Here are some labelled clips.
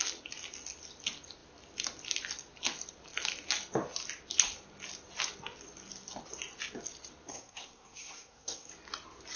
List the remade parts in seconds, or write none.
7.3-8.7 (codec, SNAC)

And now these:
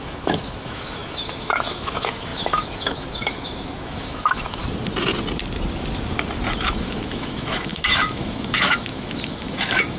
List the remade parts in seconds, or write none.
0.0-4.6 (autoencoder, DAC-VAE); 6.6-10.0